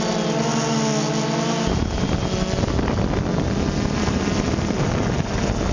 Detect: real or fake real